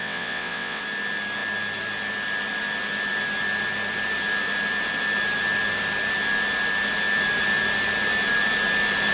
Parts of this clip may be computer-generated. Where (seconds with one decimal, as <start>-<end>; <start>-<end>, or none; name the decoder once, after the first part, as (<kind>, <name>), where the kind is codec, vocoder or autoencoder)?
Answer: 0.0-0.8 (vocoder, WaveNeXt)